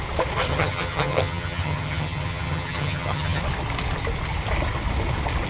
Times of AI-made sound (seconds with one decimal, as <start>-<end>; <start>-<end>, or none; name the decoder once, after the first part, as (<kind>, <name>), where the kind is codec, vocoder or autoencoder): 0.5-3.4 (vocoder, HiFi-GAN)